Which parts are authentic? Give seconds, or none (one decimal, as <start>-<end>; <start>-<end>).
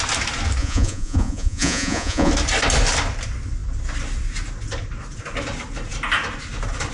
0.0-0.6; 2.3-6.9